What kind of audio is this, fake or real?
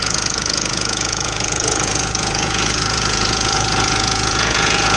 fake